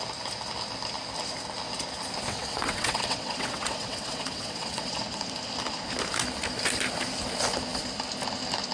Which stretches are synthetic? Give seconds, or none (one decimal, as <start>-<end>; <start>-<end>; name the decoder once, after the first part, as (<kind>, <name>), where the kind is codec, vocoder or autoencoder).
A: 2.3-4.9 (vocoder, WaveNeXt)

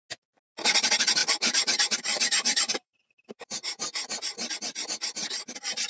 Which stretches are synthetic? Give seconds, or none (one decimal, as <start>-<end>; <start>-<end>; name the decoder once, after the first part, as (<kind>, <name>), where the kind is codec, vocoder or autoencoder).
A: 1.2-4.5 (vocoder, BigVGAN v2)

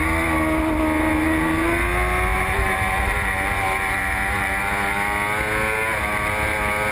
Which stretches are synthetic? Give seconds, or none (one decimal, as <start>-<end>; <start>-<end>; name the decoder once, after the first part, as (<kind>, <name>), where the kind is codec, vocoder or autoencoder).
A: 2.3-4.6 (vocoder, BigVGAN v2)

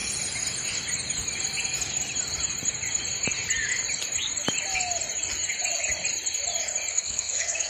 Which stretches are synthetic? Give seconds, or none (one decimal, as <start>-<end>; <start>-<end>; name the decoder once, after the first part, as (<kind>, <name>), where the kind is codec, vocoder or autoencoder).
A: 6.9-7.7 (codec, SNAC)